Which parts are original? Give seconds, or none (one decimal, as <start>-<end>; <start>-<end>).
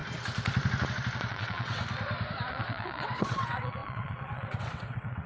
0.0-1.3; 1.8-2.5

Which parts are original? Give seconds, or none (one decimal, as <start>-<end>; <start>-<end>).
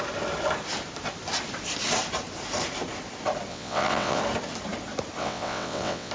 0.0-3.5; 4.2-5.2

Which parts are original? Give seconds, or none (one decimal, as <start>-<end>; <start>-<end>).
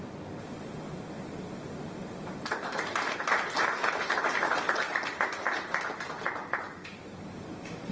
0.0-7.9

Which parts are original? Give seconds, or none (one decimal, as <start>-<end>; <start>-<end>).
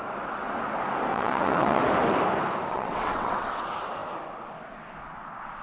0.0-1.1; 1.8-2.7; 3.5-5.6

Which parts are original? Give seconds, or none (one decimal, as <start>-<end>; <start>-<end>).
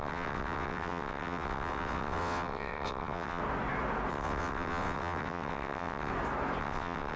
3.4-4.1; 6.1-6.6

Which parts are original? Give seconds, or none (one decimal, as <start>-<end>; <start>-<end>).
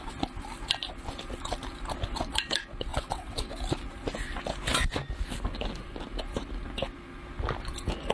0.0-2.9; 3.5-8.1